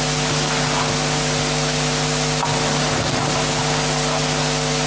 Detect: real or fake real